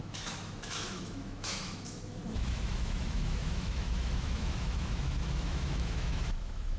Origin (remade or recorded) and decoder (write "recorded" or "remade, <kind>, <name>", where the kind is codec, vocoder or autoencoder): remade, autoencoder, DAC-VAE